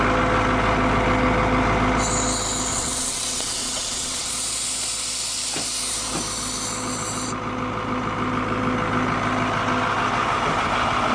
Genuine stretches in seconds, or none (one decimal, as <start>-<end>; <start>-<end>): 0.0-2.7; 4.3-11.1